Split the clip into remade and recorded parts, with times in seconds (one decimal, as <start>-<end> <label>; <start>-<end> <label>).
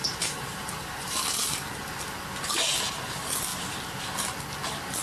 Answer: 0.0-1.2 remade; 1.2-5.0 recorded